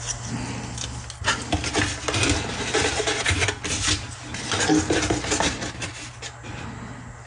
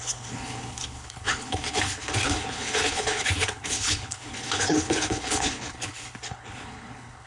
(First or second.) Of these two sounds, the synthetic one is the second